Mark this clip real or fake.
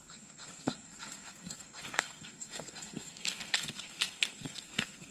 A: fake